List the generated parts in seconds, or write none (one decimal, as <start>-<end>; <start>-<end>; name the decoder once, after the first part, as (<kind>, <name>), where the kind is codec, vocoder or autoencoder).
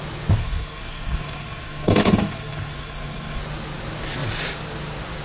0.4-3.4 (codec, SNAC)